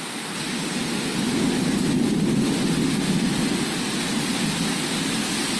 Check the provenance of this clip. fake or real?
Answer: real